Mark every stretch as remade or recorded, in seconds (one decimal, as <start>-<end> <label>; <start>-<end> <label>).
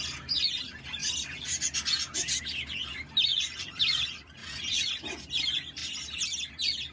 0.0-3.3 recorded; 3.3-3.8 remade; 3.8-4.4 recorded; 4.4-4.9 remade; 4.9-6.9 recorded